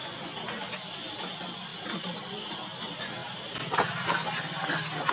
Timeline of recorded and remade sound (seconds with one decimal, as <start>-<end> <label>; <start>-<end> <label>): 0.0-5.1 recorded